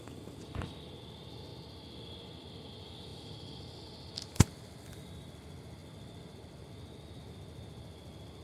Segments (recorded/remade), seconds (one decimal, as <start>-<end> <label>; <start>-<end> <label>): 0.0-8.4 recorded